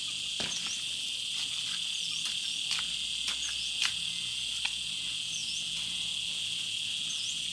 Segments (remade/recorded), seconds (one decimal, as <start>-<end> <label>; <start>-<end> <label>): 0.0-7.5 recorded

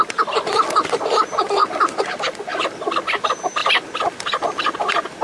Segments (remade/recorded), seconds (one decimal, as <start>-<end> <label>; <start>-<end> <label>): 0.0-1.1 recorded; 1.1-1.6 remade; 1.6-2.8 recorded; 2.8-5.2 remade

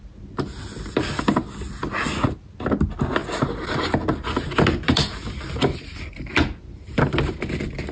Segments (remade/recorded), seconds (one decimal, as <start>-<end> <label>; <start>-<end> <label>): 0.0-7.9 recorded

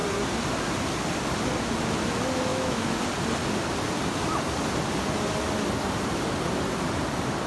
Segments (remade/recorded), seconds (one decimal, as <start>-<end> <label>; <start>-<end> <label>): 0.0-2.5 recorded; 2.5-3.0 remade; 3.0-7.5 recorded

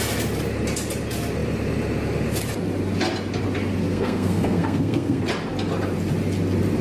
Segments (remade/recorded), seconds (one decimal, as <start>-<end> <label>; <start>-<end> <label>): 0.0-3.9 recorded; 3.9-5.2 remade; 5.2-6.8 recorded

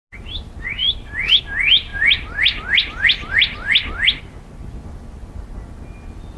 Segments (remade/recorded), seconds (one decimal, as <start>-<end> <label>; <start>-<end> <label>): 0.0-6.4 recorded